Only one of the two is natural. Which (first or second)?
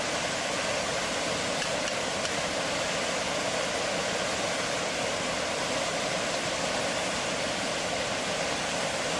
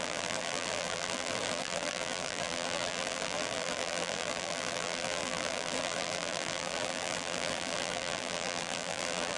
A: first